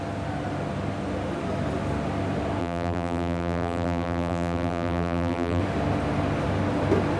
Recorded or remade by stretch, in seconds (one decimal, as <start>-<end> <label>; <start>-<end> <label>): 0.0-2.6 recorded; 2.6-5.6 remade; 5.6-7.2 recorded